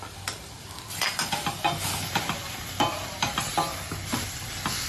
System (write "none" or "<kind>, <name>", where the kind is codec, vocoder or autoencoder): vocoder, BigVGAN v2